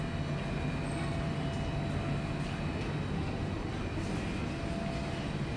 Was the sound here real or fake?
real